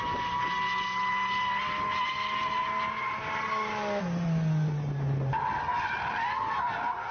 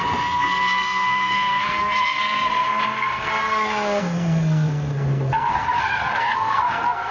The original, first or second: first